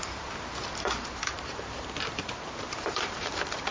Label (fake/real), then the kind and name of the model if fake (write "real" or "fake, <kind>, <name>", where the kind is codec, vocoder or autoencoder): fake, vocoder, BigVGAN v2